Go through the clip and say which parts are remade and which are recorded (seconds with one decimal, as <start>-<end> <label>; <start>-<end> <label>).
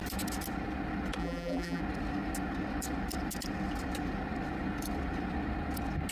0.0-1.2 recorded; 1.2-1.8 remade; 1.8-6.1 recorded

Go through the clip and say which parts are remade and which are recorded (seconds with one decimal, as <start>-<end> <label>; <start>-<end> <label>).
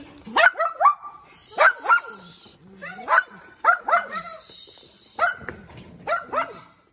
0.0-1.4 recorded; 1.4-5.5 remade; 5.5-6.9 recorded